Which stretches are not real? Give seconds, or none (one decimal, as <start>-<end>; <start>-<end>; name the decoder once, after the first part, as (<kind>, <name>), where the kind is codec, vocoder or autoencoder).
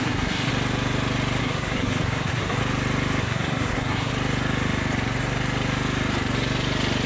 0.0-0.5 (codec, SNAC); 1.4-2.6; 3.2-4.1